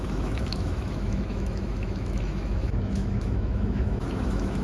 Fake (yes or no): yes